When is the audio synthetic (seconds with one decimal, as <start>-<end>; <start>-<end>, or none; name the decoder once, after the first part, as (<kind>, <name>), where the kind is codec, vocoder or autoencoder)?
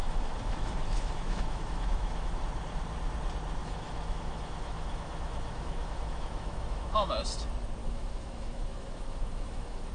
0.0-2.4 (autoencoder, DAC-VAE); 3.6-7.1; 7.8-9.9